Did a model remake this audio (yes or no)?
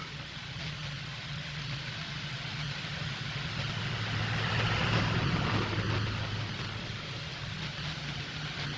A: no